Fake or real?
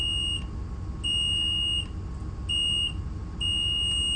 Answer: real